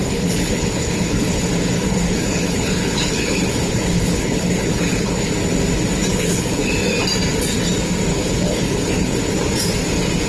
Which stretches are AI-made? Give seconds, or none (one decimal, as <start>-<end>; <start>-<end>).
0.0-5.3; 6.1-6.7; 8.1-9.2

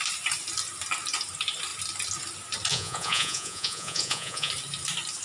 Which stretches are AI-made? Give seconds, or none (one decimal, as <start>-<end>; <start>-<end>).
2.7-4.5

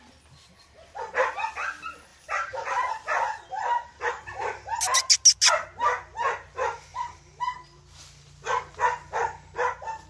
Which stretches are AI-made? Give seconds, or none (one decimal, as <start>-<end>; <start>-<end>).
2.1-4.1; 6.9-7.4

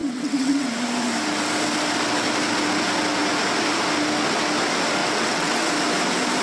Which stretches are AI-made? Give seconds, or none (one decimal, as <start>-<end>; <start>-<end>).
0.0-0.7; 5.0-5.6

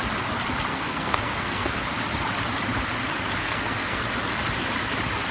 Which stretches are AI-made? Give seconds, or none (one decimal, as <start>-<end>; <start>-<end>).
0.7-1.8; 3.4-4.0